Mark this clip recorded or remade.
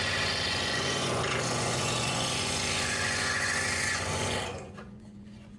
remade